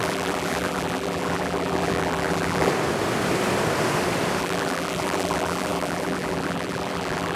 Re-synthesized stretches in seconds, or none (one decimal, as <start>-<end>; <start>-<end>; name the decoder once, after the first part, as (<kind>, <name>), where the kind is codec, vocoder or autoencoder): 0.0-2.7 (vocoder, BigVGAN v2); 4.4-7.4